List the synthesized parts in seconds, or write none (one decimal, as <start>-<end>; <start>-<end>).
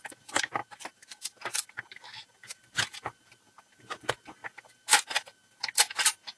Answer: none